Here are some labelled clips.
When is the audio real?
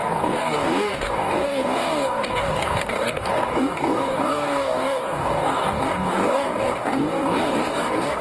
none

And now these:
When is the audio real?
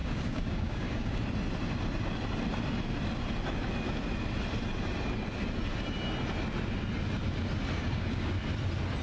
1.2-7.8; 8.3-9.0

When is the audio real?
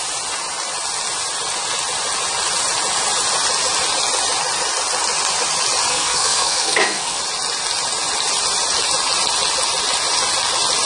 0.0-5.9; 7.2-10.9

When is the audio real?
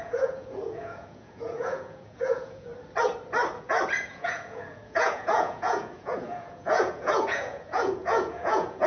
2.7-4.0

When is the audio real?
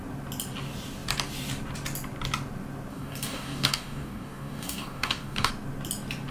0.0-2.9; 5.5-6.3